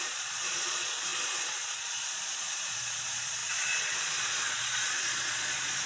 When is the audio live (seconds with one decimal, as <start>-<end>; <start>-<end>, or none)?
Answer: none